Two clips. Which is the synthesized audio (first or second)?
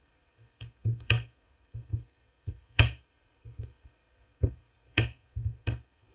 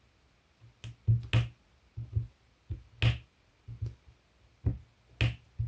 first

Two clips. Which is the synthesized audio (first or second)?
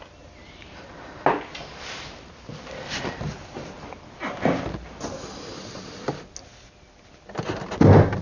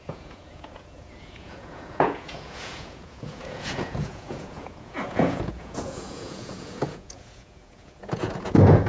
second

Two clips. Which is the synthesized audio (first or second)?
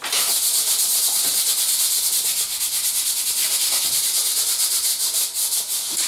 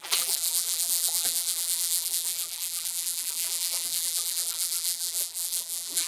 second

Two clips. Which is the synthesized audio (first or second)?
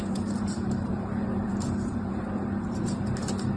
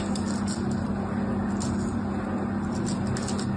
first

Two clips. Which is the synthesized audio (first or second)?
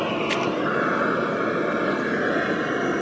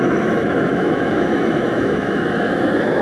second